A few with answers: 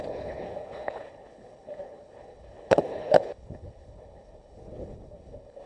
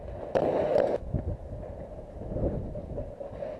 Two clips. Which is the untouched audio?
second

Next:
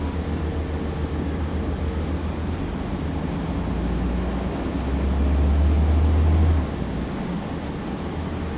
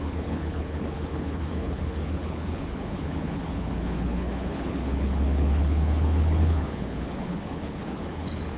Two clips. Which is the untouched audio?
first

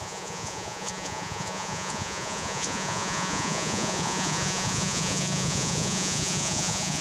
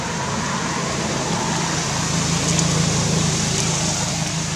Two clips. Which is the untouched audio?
second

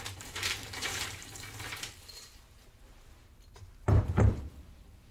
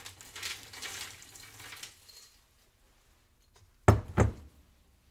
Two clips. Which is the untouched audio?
second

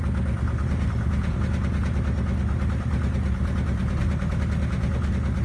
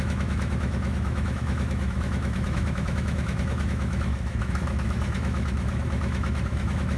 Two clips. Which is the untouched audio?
first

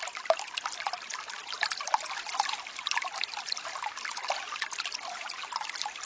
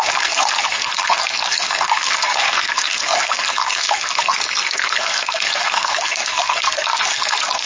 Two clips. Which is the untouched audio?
first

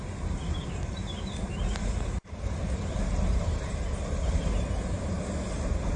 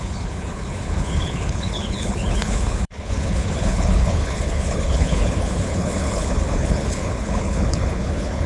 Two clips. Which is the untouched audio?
first